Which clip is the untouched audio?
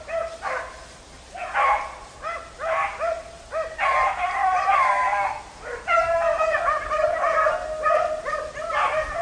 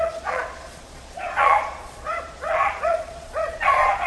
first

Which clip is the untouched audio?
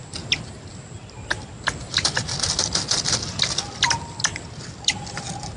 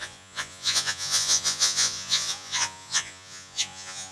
first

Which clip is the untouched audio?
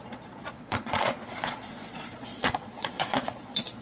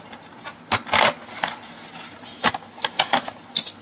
second